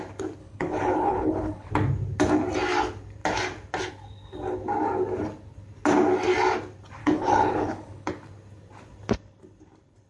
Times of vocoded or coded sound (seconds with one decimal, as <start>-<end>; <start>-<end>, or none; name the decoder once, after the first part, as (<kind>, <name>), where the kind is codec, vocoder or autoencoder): 0.4-1.7 (codec, HILCodec); 7.0-8.1